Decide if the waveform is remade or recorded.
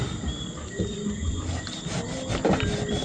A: recorded